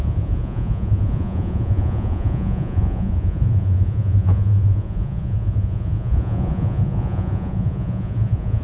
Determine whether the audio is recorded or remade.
remade